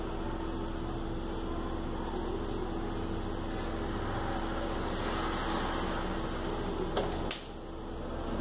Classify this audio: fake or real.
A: real